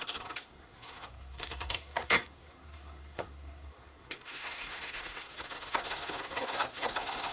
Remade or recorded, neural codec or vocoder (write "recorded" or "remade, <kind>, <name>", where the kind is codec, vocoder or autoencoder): remade, codec, SNAC